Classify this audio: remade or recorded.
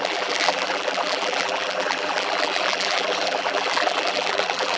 remade